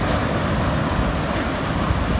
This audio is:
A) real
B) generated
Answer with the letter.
A